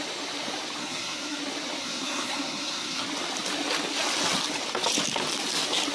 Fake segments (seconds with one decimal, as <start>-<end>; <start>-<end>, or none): 0.8-1.4; 1.8-3.0